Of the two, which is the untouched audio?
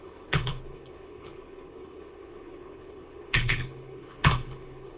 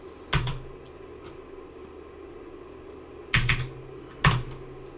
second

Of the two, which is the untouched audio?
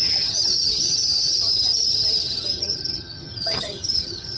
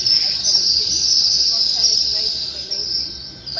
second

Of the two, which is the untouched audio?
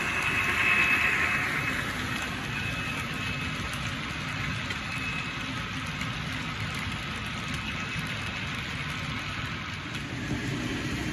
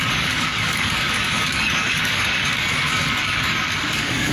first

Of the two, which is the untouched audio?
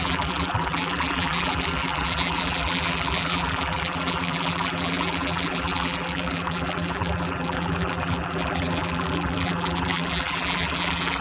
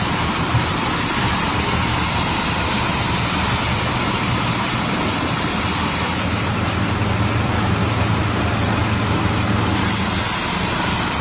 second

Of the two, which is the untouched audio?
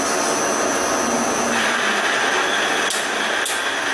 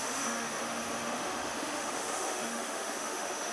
first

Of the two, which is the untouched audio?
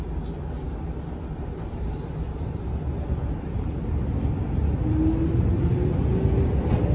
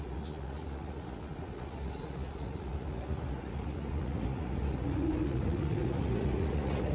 first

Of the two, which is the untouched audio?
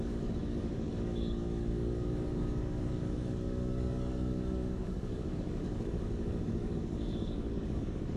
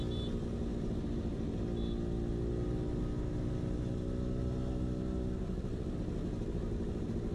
second